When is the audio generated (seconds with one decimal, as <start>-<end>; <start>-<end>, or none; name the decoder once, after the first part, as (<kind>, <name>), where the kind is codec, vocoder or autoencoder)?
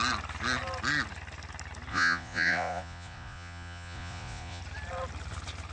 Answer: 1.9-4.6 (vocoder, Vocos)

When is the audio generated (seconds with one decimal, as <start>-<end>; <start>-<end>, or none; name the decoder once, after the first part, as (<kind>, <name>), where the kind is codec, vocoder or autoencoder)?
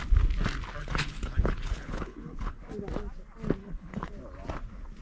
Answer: 0.8-2.6 (codec, HILCodec); 3.6-4.1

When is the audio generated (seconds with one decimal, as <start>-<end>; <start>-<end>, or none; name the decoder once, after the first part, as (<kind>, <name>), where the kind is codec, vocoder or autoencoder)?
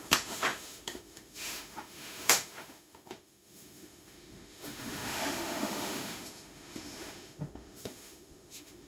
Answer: 0.0-8.9 (autoencoder, DAC-VAE)